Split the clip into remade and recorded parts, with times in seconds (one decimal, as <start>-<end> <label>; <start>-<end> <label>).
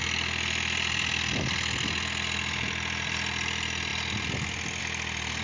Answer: 0.0-5.4 recorded